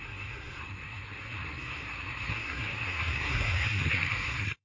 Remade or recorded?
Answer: remade